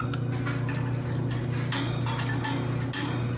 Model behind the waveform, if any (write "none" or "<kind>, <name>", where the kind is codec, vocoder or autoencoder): none